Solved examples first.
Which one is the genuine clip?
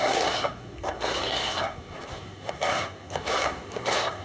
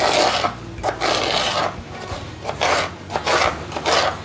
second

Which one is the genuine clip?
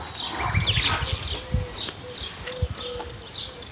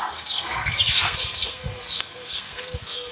first